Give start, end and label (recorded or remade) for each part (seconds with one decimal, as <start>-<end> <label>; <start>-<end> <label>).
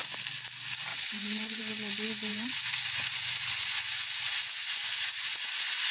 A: 0.0-0.9 recorded; 0.9-1.6 remade; 1.6-2.3 recorded; 2.3-5.5 remade; 5.5-5.9 recorded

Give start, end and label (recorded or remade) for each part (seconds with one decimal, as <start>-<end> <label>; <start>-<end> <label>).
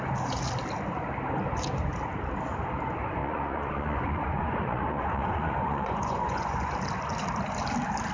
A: 0.0-3.2 recorded; 3.2-6.7 remade; 6.7-8.1 recorded